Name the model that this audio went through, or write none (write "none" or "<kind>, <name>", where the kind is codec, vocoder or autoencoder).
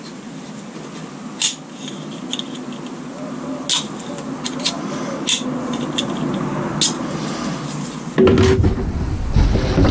none